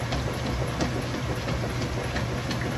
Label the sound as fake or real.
real